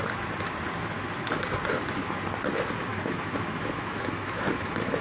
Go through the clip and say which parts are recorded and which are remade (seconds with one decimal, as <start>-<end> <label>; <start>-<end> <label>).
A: 0.0-2.9 recorded; 2.9-5.0 remade